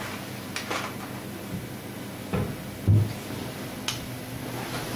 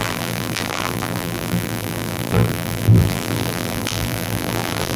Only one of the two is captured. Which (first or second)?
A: first